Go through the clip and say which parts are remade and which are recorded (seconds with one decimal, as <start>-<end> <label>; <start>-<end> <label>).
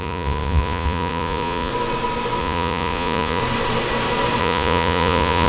0.0-1.7 remade; 1.7-2.4 recorded; 2.4-3.4 remade; 3.4-4.4 recorded; 4.4-5.5 remade